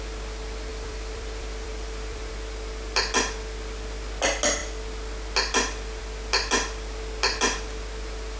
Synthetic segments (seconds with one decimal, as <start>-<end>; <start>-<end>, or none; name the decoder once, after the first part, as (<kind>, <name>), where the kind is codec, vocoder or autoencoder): 0.7-2.3 (vocoder, BigVGAN v2)